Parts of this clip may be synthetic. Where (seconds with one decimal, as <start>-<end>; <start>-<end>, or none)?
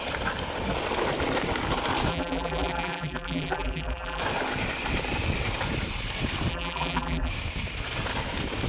2.1-4.2; 6.5-7.3